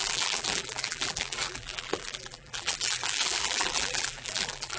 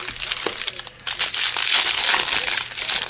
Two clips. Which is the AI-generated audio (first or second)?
first